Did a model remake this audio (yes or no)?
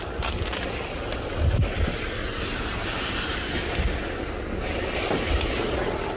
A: no